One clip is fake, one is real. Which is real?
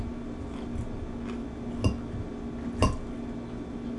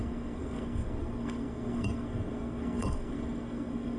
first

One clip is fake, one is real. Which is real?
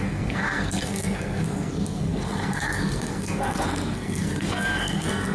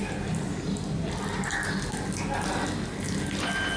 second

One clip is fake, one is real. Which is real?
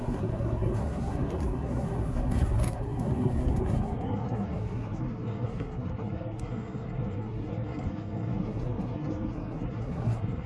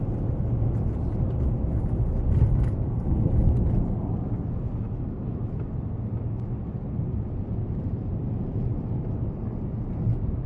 second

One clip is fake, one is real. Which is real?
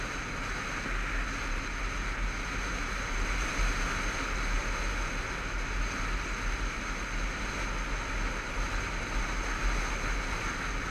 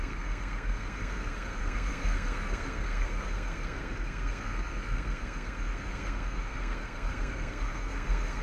first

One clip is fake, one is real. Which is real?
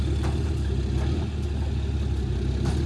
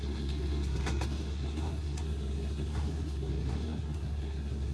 first